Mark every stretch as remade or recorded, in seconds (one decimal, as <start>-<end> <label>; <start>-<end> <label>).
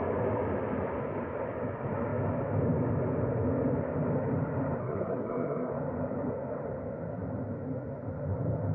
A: 0.0-4.8 recorded; 4.8-5.7 remade; 5.7-8.7 recorded